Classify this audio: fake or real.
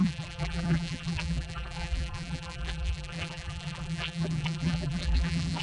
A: fake